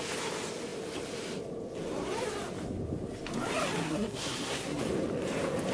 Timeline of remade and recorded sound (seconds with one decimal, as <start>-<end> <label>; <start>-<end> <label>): 0.0-3.8 recorded; 3.8-4.8 remade; 4.8-5.7 recorded